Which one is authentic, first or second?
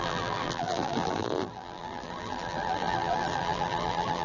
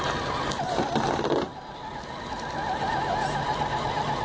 second